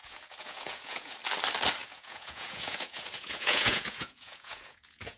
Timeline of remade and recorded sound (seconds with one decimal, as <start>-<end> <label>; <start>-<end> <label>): 0.0-1.1 remade; 1.1-1.8 recorded; 1.8-5.2 remade